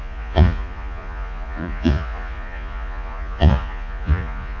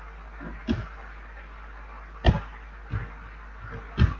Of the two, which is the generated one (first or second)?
first